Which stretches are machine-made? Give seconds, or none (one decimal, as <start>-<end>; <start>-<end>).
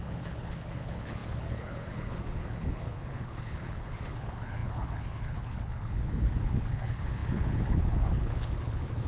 0.0-9.1